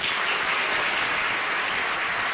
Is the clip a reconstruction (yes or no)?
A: no